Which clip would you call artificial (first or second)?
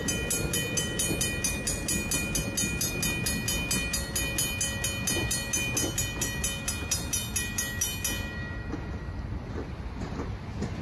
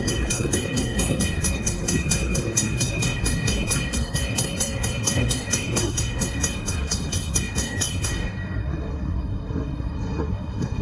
second